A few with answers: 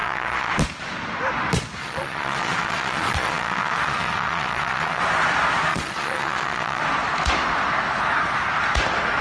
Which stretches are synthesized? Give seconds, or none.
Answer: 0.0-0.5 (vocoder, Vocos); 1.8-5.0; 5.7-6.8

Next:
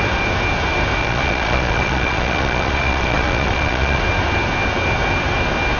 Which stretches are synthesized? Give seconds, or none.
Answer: 1.0-4.0 (vocoder, Vocos)

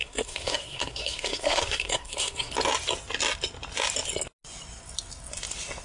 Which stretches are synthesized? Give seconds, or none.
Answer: 0.0-2.5 (codec, SNAC)

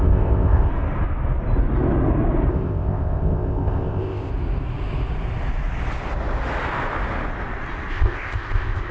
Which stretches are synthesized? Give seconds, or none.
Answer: 0.0-0.7 (codec, ZipCodec); 2.5-4.3; 7.9-8.9

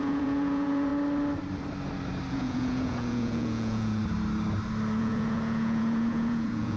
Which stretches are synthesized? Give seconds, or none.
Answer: 0.0-0.9 (vocoder, Vocos); 2.3-4.0; 5.0-6.8

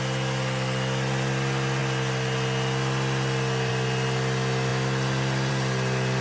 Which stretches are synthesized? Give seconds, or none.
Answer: none

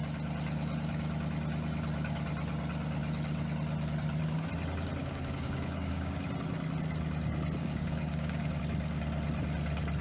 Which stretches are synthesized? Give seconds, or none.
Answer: 5.0-6.2 (codec, DAC); 7.6-8.6

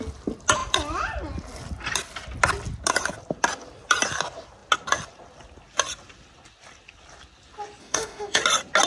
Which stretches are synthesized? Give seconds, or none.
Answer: 7.8-8.4 (autoencoder, DAC-VAE)